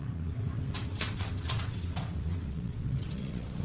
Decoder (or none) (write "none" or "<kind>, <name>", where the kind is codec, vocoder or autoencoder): vocoder, WaveNeXt